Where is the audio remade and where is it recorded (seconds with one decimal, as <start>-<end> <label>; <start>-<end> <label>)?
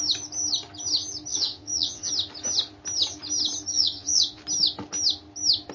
0.0-1.3 recorded; 1.3-2.1 remade; 2.1-3.7 recorded; 3.7-4.4 remade; 4.4-5.7 recorded